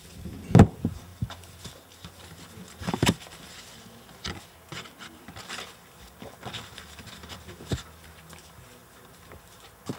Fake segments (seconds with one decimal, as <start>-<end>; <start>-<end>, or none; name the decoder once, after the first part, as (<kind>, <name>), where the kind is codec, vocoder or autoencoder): none